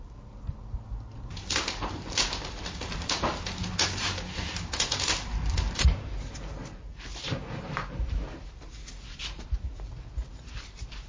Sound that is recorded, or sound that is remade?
remade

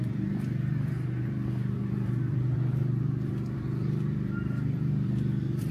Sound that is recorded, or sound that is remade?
remade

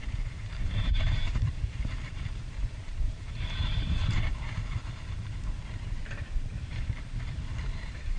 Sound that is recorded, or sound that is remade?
remade